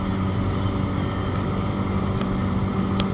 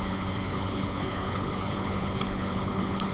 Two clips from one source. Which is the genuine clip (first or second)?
first